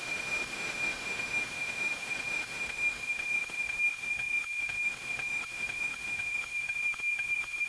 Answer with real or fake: fake